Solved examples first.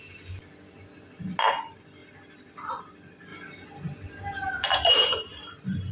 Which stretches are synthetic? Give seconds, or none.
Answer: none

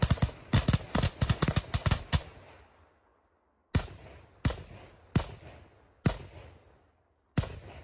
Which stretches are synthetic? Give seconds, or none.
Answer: none

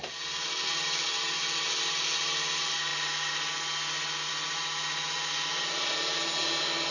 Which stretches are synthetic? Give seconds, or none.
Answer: none

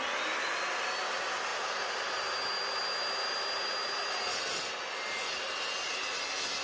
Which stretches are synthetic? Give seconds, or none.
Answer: none